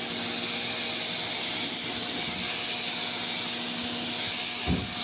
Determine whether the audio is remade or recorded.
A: recorded